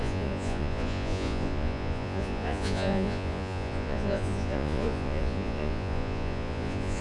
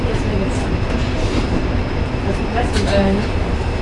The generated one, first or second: first